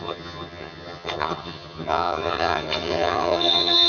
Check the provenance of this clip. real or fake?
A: fake